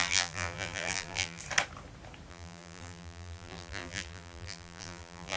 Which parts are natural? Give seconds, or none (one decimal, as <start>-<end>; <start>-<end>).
1.4-2.3